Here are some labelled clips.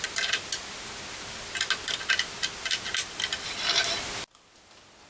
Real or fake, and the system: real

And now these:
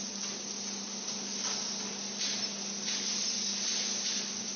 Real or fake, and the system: real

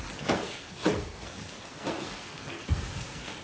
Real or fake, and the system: fake, codec, SNAC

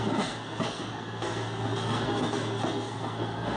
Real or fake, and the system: fake, codec, SNAC